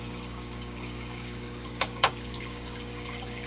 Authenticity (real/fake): fake